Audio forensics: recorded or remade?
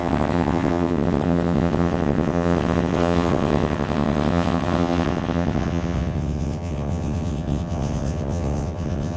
remade